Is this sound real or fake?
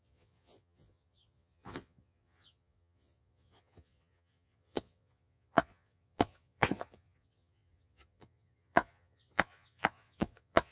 fake